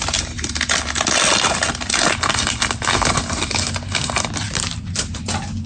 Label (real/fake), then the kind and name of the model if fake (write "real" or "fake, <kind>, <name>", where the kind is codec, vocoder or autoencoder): real